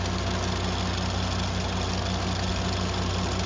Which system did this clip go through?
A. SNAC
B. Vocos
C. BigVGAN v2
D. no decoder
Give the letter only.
D